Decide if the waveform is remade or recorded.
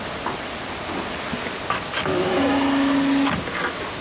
recorded